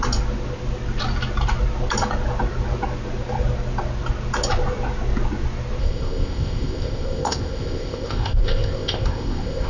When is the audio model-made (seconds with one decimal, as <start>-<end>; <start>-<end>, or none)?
5.8-9.7